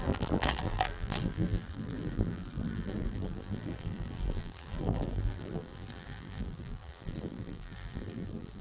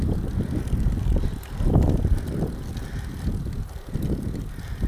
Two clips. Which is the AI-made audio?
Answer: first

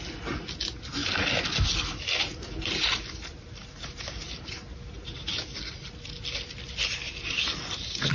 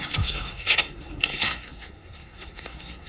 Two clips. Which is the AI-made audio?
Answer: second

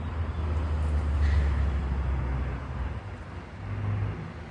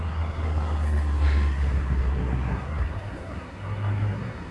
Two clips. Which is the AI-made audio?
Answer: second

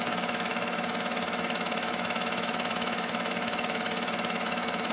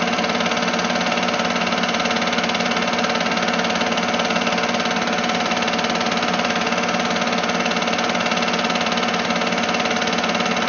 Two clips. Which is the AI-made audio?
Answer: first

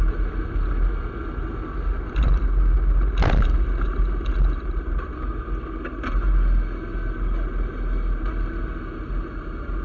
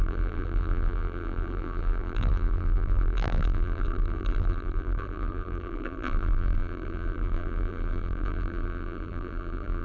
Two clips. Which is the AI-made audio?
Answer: second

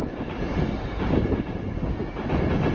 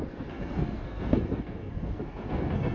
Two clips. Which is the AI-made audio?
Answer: second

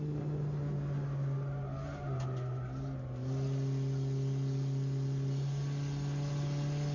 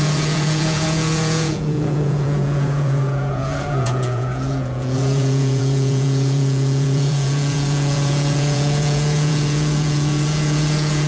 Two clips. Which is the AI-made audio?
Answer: second